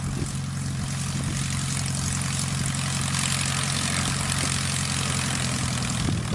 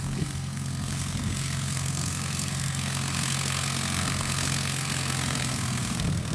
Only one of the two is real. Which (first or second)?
first